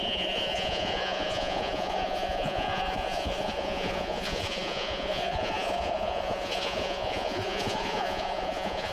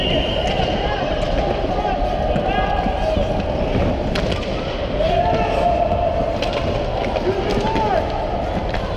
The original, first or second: second